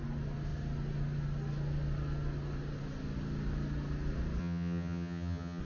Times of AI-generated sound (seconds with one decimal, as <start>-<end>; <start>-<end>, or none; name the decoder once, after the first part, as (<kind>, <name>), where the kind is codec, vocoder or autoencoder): 4.4-5.6 (vocoder, HiFi-GAN)